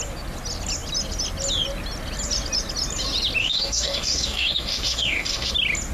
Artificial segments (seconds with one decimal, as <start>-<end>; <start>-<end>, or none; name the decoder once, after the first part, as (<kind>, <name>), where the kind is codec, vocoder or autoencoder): 3.4-5.5 (codec, DAC)

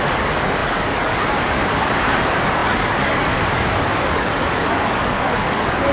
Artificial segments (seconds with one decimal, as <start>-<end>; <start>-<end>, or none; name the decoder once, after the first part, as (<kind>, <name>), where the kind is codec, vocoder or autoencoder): 0.0-5.9 (codec, DAC)